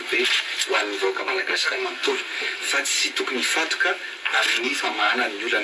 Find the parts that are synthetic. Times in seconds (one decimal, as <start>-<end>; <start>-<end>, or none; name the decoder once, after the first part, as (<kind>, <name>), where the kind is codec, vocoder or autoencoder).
0.6-2.7 (codec, SNAC); 4.2-5.1